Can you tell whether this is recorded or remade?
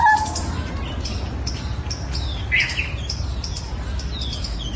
recorded